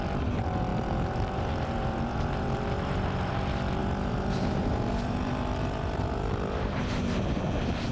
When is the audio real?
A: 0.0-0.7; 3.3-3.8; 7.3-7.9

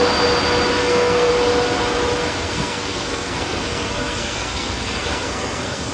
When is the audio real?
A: 0.0-0.8; 1.3-2.2

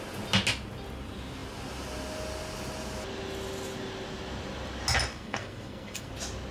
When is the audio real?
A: 0.0-5.1; 6.1-6.5

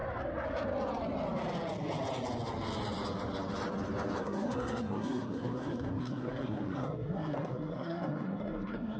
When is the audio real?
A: 0.0-4.2

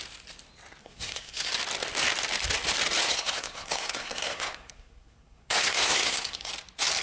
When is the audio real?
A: 0.0-0.8; 1.5-3.1; 6.5-7.0

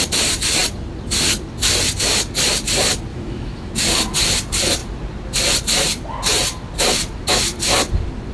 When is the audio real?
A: 0.0-3.1; 3.7-8.3

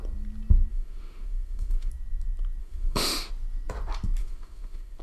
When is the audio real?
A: 0.0-0.7; 1.9-2.6; 3.3-4.2